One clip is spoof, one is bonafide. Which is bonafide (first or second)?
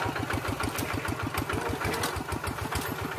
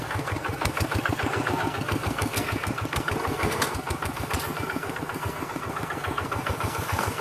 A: first